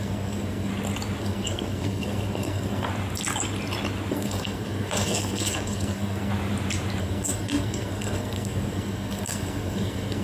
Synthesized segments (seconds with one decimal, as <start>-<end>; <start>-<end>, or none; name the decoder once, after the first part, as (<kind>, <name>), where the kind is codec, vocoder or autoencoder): 0.0-0.7 (codec, SNAC); 1.2-2.9; 4.1-6.3; 7.0-10.2